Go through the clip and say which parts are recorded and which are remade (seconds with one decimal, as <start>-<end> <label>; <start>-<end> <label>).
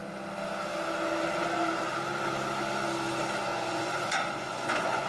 0.0-3.5 recorded; 3.5-5.1 remade